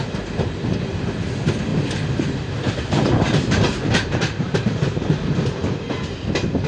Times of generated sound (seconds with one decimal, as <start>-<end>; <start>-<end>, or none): 1.7-5.7